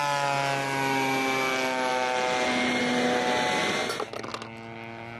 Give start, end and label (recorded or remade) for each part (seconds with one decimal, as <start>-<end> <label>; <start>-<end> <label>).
0.0-5.2 recorded